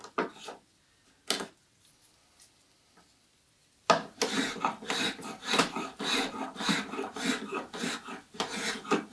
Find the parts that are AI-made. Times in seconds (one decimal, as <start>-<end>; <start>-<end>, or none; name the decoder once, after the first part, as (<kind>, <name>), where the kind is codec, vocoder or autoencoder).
none